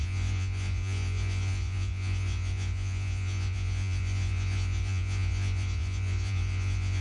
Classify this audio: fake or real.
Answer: fake